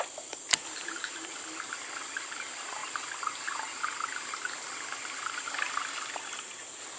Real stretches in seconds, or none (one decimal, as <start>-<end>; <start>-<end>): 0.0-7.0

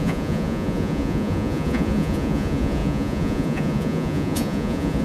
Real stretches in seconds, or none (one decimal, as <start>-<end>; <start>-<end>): none

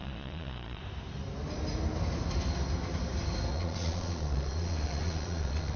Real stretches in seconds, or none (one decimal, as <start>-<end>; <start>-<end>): 0.8-3.5